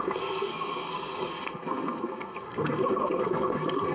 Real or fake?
fake